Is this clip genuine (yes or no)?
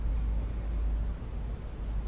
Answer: yes